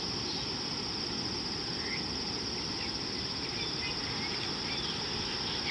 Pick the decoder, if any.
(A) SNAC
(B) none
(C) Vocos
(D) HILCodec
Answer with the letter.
B